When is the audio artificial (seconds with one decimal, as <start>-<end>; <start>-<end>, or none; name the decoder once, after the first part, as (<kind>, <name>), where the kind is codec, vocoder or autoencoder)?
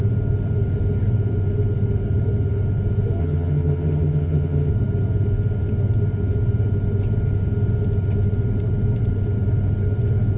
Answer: 3.2-4.7 (vocoder, HiFi-GAN)